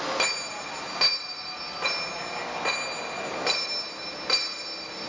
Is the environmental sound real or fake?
real